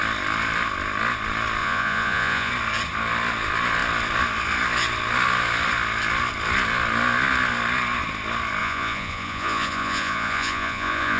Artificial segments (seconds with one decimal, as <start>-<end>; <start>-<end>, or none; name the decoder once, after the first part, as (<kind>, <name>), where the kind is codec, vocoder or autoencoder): 1.6-2.5 (vocoder, Vocos); 8.6-11.2